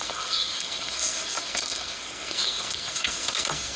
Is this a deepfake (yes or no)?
yes